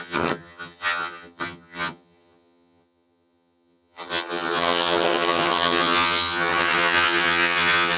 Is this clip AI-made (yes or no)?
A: yes